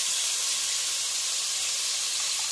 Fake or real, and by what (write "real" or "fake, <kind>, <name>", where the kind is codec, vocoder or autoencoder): real